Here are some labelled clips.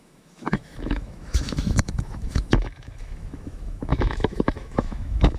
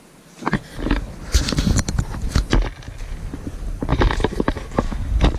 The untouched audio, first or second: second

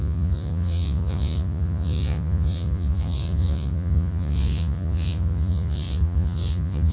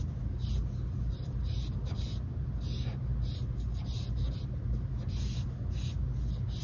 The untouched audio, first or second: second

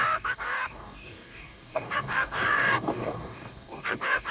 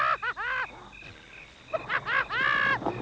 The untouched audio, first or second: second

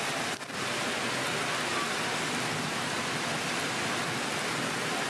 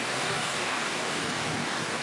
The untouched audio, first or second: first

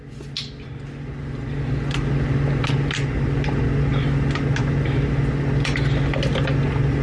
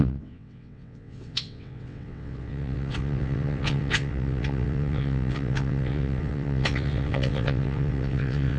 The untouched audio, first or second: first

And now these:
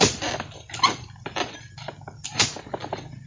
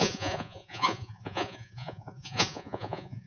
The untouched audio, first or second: first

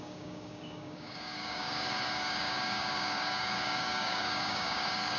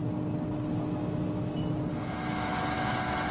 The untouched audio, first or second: second